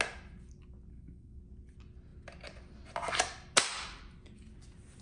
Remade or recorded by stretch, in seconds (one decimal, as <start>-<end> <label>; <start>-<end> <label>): 0.0-0.9 recorded; 0.9-1.4 remade; 1.4-5.0 recorded